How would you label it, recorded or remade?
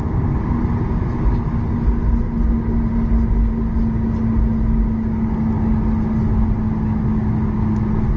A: recorded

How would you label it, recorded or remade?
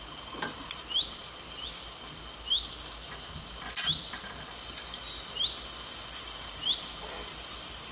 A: recorded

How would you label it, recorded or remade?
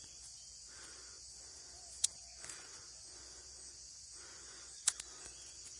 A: remade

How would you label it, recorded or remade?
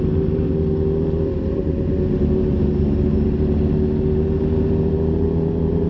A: recorded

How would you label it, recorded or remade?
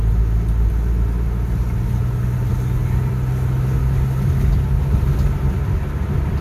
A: recorded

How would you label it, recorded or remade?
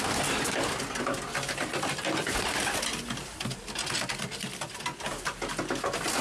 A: recorded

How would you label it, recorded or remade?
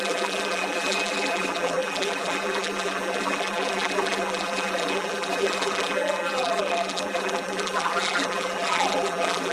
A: remade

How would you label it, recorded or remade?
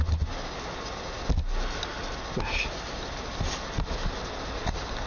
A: recorded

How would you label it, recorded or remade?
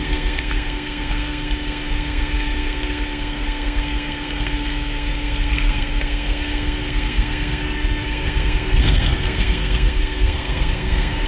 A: remade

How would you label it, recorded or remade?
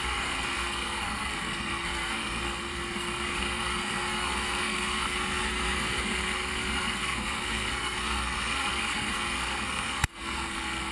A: remade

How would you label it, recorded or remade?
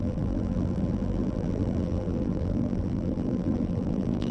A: remade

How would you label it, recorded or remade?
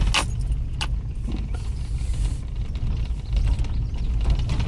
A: recorded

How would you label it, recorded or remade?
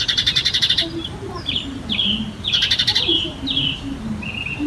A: recorded